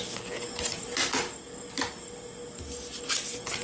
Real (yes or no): yes